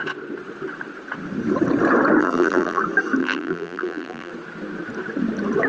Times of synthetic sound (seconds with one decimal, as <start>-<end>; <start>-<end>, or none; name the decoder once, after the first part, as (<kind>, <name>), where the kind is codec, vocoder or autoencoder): 2.2-2.8 (vocoder, BigVGAN v2); 3.2-4.3